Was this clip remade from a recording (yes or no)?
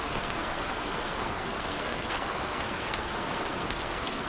yes